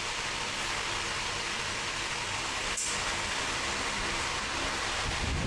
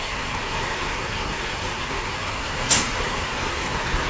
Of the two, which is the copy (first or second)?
second